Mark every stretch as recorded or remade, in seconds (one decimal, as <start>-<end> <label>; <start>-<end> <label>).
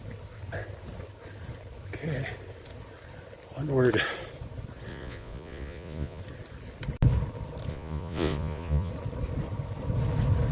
0.0-4.9 recorded; 4.9-6.2 remade; 6.2-7.7 recorded; 7.7-8.9 remade; 8.9-10.5 recorded